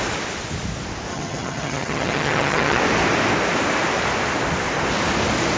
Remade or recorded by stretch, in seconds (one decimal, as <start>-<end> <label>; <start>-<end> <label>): 0.0-1.1 recorded; 1.1-2.8 remade; 2.8-5.6 recorded